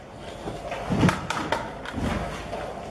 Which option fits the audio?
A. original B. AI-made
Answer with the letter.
A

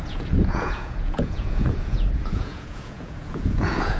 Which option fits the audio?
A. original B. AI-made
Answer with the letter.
B